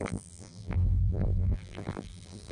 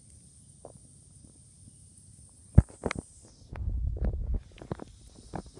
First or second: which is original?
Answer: second